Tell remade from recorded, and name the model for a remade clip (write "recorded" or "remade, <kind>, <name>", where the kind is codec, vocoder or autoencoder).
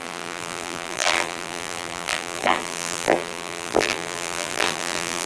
remade, vocoder, BigVGAN v2